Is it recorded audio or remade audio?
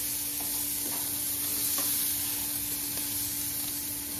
recorded